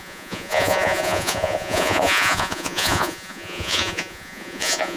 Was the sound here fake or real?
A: fake